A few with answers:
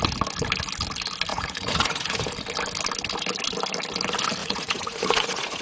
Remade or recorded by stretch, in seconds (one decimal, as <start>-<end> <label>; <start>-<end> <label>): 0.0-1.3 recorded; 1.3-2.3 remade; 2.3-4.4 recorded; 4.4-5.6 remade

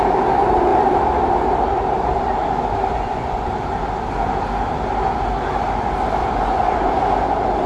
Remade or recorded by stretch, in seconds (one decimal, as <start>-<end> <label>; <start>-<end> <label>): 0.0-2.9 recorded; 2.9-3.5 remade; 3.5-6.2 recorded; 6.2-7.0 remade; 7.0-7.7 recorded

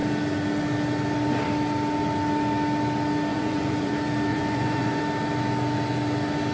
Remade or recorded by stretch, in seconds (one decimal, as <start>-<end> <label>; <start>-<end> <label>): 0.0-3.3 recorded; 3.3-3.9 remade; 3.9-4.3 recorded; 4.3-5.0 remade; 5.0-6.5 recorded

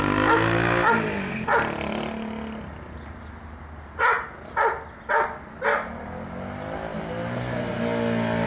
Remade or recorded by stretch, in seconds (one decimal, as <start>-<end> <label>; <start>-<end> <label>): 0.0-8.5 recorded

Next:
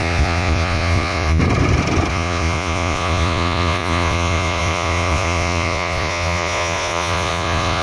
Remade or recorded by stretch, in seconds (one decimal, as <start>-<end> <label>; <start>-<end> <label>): 0.0-1.4 remade; 1.4-2.1 recorded; 2.1-7.8 remade

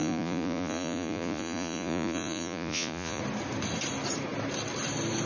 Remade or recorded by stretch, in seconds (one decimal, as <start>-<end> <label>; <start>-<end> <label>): 0.0-3.2 remade; 3.2-5.3 recorded